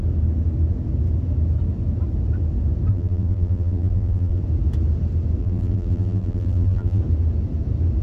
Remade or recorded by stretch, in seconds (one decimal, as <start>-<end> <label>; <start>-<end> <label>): 0.0-2.9 recorded; 2.9-4.4 remade; 4.4-5.4 recorded; 5.4-7.0 remade; 7.0-8.0 recorded